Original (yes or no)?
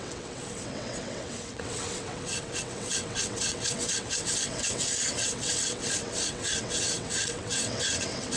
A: no